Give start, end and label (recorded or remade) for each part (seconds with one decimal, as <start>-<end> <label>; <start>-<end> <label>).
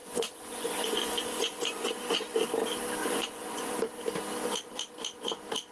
0.0-1.9 remade; 1.9-3.0 recorded; 3.0-3.7 remade; 3.7-5.7 recorded